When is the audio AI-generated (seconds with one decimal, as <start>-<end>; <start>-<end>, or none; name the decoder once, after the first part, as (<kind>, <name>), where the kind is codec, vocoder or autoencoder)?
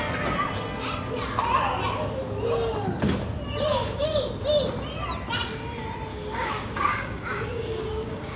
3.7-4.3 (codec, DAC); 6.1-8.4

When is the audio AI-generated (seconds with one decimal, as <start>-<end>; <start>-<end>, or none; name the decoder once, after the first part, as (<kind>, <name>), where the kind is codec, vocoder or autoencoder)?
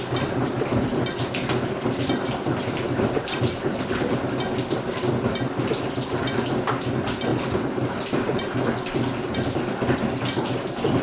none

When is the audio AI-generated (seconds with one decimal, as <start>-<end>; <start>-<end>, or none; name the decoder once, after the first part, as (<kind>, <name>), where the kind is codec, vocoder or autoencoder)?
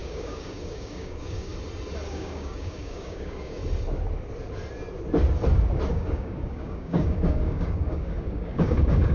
0.0-1.5 (codec, DAC); 2.1-3.6; 5.9-9.1